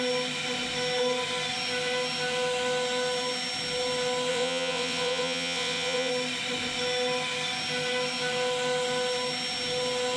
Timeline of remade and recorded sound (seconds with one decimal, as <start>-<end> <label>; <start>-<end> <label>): 0.0-4.3 recorded; 4.3-6.1 remade; 6.1-10.2 recorded